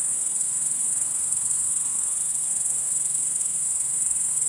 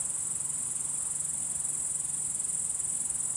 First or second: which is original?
second